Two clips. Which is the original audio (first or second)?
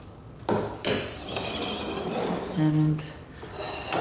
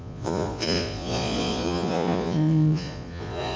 first